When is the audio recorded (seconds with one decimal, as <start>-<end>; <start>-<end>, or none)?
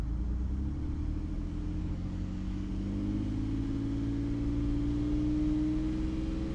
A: 0.0-1.8; 2.7-6.5